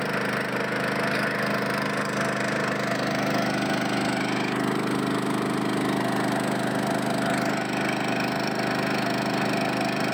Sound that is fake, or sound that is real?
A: real